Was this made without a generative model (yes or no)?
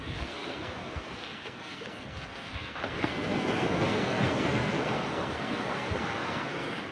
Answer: no